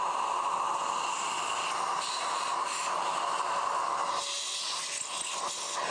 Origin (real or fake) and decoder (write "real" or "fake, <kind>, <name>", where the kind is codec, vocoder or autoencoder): real